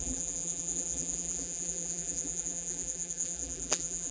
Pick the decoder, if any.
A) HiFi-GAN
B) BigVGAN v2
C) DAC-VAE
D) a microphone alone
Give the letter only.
B